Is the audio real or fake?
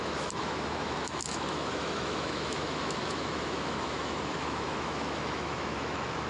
fake